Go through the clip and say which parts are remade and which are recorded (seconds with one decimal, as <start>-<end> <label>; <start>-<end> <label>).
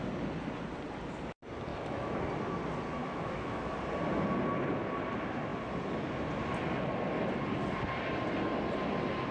0.0-1.7 recorded; 1.7-2.2 remade; 2.2-3.0 recorded; 3.0-3.7 remade; 3.7-9.3 recorded